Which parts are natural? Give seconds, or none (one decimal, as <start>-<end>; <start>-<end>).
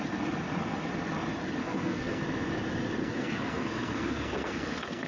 0.0-1.6; 2.2-3.0